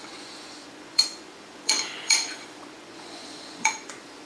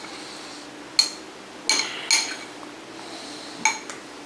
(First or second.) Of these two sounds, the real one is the second